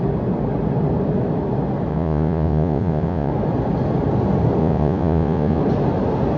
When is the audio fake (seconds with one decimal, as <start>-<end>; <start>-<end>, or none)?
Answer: 1.9-3.3; 4.6-5.6